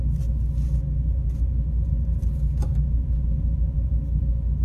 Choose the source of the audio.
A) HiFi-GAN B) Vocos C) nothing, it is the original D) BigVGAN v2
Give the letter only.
C